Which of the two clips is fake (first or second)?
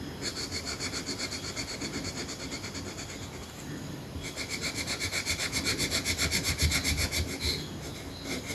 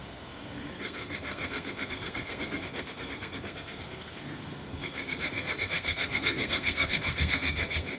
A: second